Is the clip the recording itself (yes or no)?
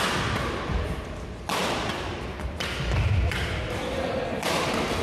yes